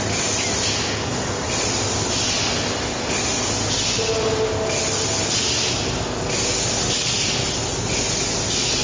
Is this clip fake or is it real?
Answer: real